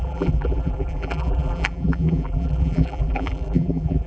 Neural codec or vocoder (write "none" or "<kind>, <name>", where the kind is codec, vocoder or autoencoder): vocoder, BigVGAN v2